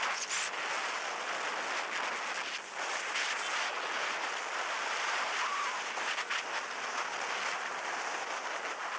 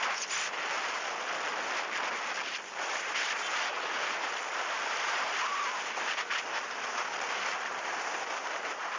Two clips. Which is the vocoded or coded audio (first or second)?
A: second